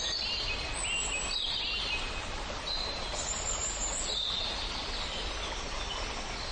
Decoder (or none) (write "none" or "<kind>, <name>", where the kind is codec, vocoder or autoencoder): none